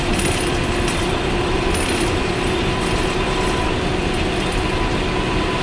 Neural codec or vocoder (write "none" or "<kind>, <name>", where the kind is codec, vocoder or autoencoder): none